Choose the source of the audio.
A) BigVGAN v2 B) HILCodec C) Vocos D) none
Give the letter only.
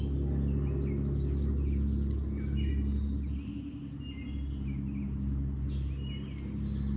D